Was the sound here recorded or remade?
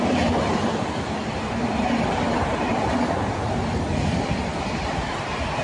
remade